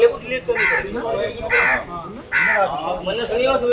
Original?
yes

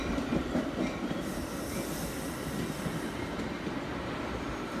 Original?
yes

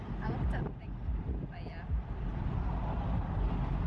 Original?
yes